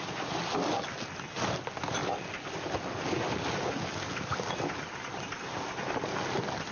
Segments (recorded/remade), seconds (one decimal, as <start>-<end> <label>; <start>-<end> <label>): 0.0-6.7 recorded